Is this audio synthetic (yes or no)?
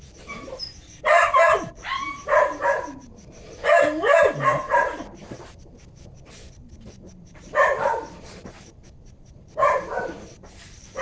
yes